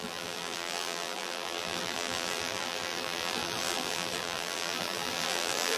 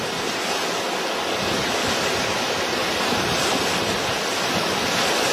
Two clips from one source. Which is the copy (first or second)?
first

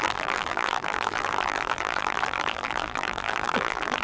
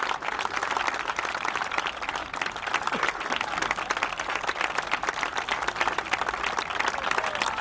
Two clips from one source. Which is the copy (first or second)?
first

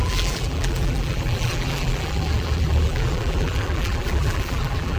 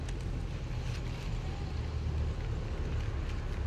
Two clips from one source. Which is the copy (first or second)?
first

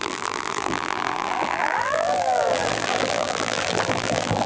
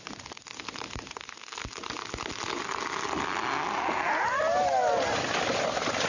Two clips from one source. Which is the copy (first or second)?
first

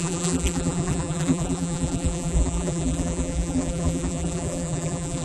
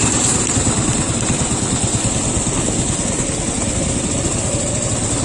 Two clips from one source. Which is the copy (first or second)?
first